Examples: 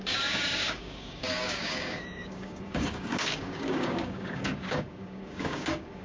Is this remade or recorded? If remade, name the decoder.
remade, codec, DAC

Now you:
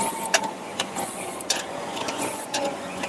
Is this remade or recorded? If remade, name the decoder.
remade, vocoder, Vocos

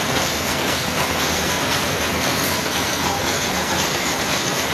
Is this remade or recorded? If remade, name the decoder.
remade, codec, SNAC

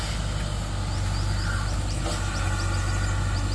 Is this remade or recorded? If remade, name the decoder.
recorded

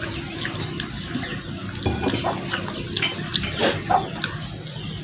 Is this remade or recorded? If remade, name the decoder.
recorded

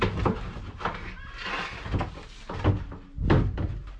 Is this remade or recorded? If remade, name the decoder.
recorded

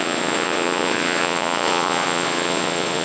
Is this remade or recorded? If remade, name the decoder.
remade, vocoder, Vocos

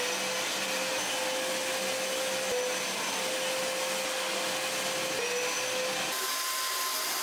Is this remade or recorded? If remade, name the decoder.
recorded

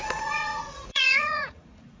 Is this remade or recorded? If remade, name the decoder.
remade, vocoder, Vocos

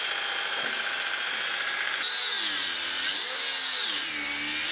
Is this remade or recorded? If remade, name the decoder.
recorded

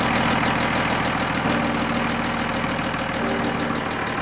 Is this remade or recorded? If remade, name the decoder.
recorded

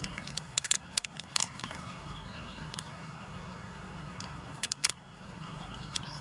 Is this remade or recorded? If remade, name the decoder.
remade, codec, SNAC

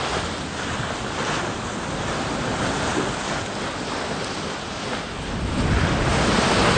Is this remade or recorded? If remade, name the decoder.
recorded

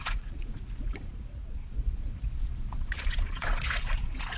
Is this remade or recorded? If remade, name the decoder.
remade, vocoder, Vocos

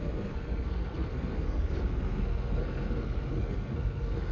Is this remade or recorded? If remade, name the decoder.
remade, codec, SNAC